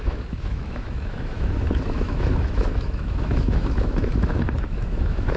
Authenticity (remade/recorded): remade